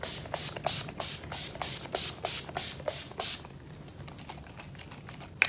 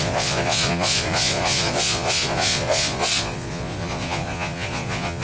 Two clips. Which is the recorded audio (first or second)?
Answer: first